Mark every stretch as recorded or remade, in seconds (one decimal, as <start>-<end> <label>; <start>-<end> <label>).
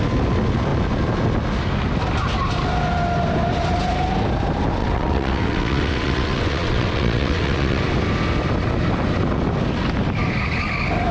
0.0-4.8 recorded; 4.8-7.8 remade; 7.8-11.1 recorded